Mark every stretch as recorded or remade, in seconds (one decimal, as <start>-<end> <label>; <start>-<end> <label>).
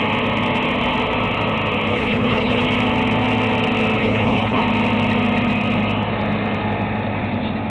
0.0-1.9 recorded; 1.9-2.6 remade; 2.6-4.0 recorded; 4.0-4.6 remade; 4.6-7.7 recorded